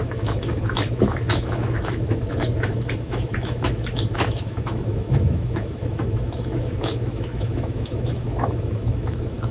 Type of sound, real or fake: fake